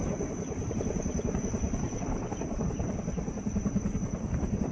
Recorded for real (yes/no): yes